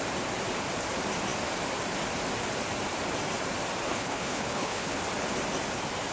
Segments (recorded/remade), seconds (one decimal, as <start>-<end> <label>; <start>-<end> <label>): 0.0-3.9 recorded; 3.9-5.0 remade; 5.0-6.1 recorded